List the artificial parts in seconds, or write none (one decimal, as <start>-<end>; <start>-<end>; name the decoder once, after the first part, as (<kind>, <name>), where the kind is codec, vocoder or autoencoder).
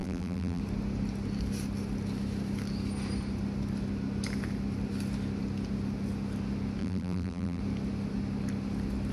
0.0-0.6 (vocoder, BigVGAN v2); 6.8-7.6